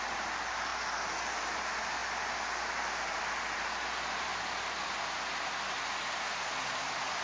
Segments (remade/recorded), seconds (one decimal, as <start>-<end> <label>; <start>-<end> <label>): 0.0-0.7 remade; 0.7-1.2 recorded; 1.2-2.0 remade; 2.0-3.1 recorded; 3.1-4.3 remade; 4.3-6.6 recorded; 6.6-7.2 remade

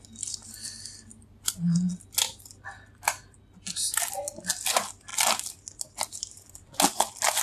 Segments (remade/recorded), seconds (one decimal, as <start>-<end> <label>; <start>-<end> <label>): 0.0-7.4 recorded

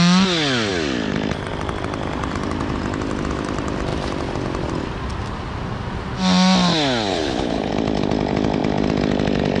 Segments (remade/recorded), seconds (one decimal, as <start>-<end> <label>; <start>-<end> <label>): 0.0-7.1 recorded; 7.1-7.7 remade; 7.7-9.6 recorded

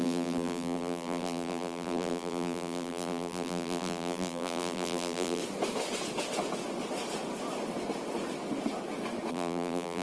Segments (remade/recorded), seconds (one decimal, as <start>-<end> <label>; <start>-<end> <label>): 0.0-5.4 remade; 5.4-9.3 recorded; 9.3-10.0 remade